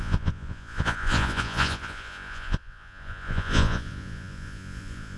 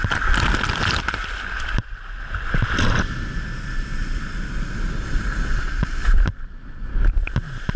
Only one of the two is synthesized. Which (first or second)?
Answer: first